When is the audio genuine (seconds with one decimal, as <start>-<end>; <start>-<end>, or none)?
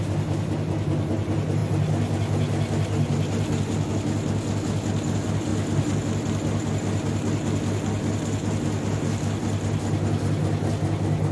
0.0-11.3